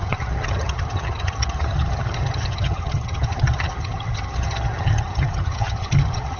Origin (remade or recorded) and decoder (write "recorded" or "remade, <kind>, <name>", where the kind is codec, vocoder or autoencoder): remade, vocoder, HiFi-GAN